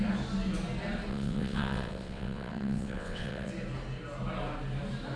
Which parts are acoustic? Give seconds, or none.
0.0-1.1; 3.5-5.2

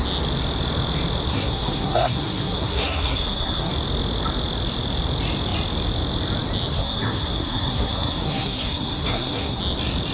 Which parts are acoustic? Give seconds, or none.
0.0-1.3; 3.7-6.7; 9.6-10.1

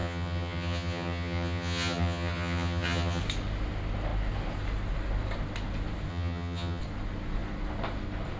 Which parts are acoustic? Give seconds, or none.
3.2-6.1; 6.8-8.4

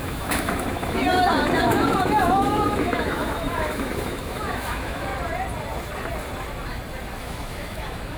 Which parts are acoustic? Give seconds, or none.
5.1-7.2

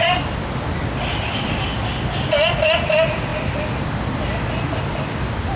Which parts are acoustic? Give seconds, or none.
0.0-5.6

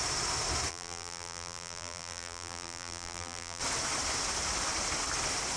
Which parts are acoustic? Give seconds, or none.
0.0-0.7; 3.6-5.6

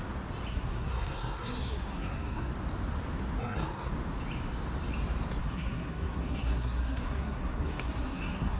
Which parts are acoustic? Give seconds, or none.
0.0-0.5; 2.5-3.4; 3.9-5.4